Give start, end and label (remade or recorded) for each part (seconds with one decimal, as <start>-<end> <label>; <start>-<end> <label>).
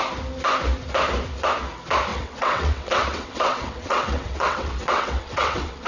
0.0-2.1 recorded; 2.1-5.9 remade